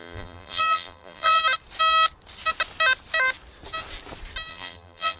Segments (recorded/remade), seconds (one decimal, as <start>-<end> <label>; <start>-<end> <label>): 0.0-1.4 remade; 1.4-4.5 recorded; 4.5-5.2 remade